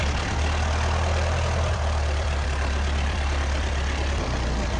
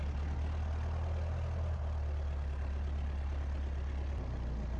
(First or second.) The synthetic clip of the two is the first